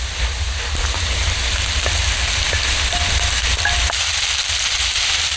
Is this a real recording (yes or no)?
yes